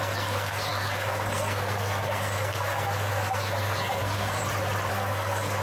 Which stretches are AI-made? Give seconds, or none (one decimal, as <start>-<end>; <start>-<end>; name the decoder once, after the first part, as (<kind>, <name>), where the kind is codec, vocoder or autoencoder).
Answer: 0.0-4.4 (codec, SNAC); 4.9-5.6